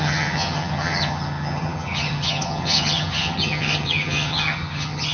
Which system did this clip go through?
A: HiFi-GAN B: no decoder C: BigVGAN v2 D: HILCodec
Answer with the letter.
A